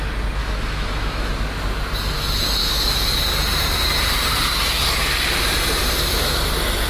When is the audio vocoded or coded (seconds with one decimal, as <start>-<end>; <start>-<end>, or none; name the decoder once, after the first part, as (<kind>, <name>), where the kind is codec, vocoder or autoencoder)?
0.4-1.3 (autoencoder, DAC-VAE); 2.6-3.2